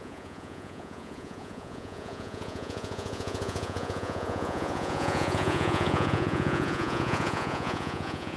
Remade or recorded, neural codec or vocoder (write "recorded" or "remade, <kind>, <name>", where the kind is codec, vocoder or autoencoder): remade, vocoder, Vocos